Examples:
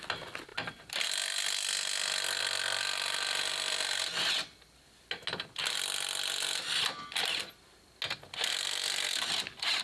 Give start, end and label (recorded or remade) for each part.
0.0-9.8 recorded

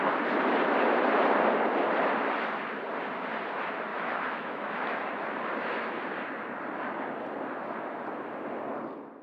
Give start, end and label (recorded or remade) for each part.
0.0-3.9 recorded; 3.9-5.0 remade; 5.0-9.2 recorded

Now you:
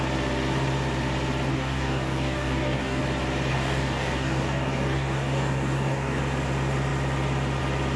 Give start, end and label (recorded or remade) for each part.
0.0-1.5 recorded; 1.5-3.0 remade; 3.0-3.5 recorded; 3.5-6.2 remade; 6.2-8.0 recorded

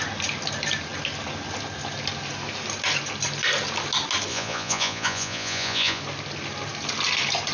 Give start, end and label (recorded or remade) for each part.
0.0-4.3 recorded; 4.3-6.0 remade; 6.0-7.5 recorded